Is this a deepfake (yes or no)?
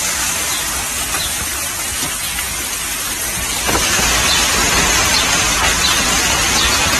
no